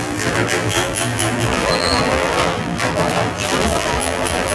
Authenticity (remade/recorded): remade